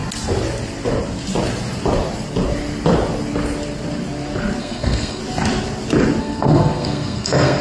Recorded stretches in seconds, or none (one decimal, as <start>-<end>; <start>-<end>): 0.0-4.6; 5.2-6.2